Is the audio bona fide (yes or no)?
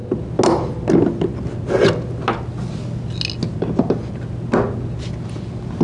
yes